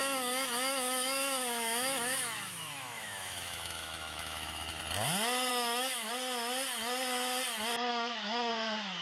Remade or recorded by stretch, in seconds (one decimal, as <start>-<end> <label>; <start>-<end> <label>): 0.0-4.8 remade; 4.8-5.5 recorded; 5.5-6.1 remade; 6.1-7.9 recorded; 7.9-8.5 remade; 8.5-9.0 recorded